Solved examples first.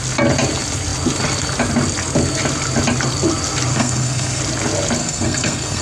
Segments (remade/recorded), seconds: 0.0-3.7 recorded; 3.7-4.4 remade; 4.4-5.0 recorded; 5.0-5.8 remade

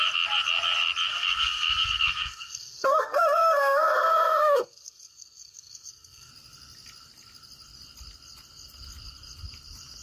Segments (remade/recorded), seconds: 0.0-1.1 recorded; 1.1-6.3 remade; 6.3-10.0 recorded

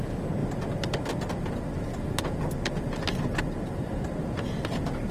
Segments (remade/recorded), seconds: 0.0-5.1 recorded